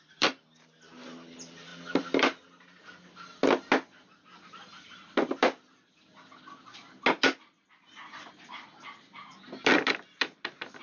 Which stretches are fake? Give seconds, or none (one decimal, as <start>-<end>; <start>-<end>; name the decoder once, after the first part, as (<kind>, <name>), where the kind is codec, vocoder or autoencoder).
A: none

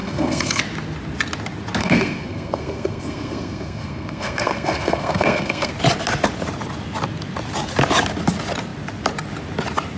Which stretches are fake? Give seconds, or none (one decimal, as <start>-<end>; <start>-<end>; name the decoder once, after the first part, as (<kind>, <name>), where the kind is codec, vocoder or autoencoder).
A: 0.0-0.6 (codec, SNAC); 1.8-5.7

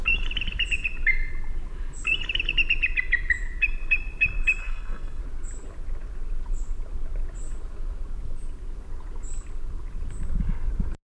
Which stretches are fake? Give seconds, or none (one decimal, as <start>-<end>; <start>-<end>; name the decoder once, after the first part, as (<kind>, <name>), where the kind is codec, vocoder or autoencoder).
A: 4.6-5.2 (codec, SNAC)

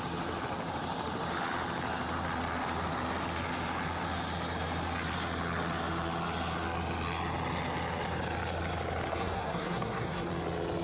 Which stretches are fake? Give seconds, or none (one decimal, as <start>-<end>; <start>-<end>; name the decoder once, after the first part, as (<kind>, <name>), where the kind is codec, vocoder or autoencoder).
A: 9.1-10.3 (codec, SNAC)

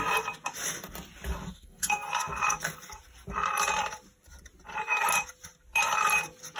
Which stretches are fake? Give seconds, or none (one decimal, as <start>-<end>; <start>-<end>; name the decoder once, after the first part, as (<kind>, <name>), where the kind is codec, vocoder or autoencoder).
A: 1.5-2.1 (codec, SNAC)